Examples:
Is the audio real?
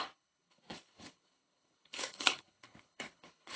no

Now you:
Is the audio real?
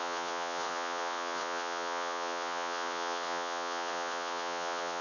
no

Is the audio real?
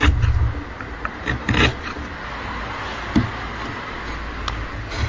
yes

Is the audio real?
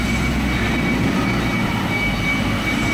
yes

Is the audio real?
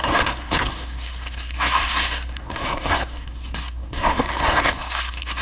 no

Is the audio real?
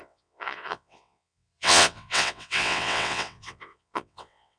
no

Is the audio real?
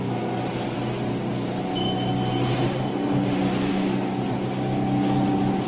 yes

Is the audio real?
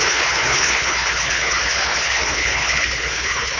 no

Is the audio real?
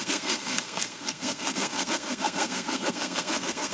no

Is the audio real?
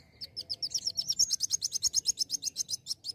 yes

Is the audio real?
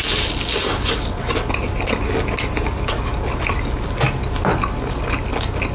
yes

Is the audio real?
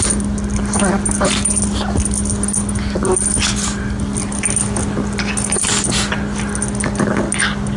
yes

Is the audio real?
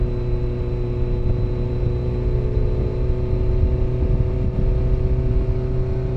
yes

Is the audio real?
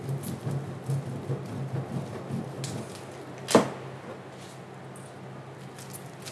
yes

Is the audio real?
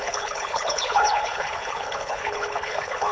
no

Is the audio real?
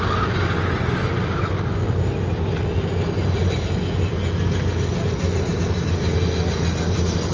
yes